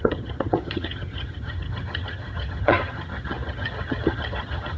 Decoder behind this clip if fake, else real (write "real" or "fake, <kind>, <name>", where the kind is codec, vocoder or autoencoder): fake, vocoder, HiFi-GAN